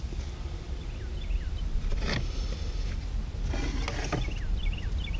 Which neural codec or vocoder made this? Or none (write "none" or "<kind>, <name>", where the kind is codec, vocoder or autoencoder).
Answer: none